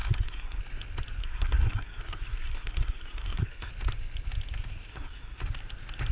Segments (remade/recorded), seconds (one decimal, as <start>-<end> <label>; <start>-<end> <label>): 0.0-0.6 remade; 0.6-1.2 recorded; 1.2-3.7 remade; 3.7-4.9 recorded; 4.9-5.4 remade; 5.4-6.1 recorded